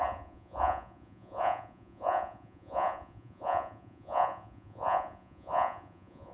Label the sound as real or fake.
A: fake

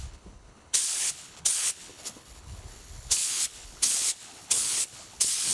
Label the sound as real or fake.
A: fake